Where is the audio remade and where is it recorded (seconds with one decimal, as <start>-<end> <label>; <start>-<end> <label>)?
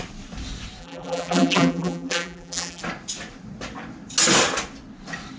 0.0-0.8 recorded; 0.8-2.8 remade; 2.8-5.4 recorded